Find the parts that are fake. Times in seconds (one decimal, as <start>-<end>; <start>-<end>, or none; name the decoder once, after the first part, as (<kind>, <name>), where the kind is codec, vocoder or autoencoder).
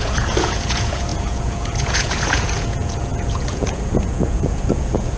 0.0-5.2 (vocoder, Vocos)